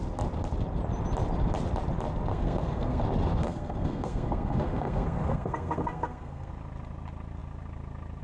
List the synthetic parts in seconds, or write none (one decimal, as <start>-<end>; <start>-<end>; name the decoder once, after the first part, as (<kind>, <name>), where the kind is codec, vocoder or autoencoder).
2.3-3.0 (codec, SNAC); 3.4-6.5